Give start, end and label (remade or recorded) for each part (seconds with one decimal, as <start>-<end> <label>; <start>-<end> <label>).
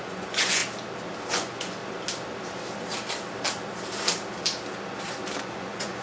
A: 0.0-0.6 remade; 0.6-1.3 recorded; 1.3-1.8 remade; 1.8-5.4 recorded; 5.4-6.0 remade